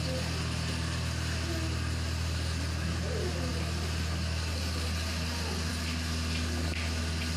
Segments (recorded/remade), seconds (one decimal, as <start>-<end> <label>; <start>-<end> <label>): 0.0-7.4 recorded